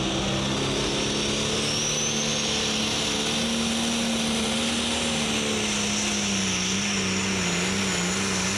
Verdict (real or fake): real